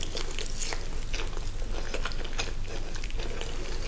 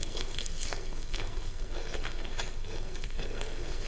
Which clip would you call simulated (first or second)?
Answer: second